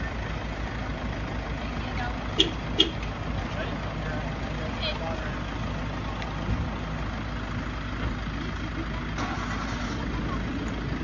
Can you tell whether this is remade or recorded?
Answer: recorded